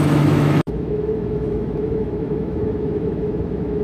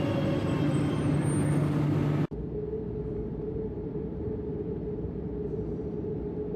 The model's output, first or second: first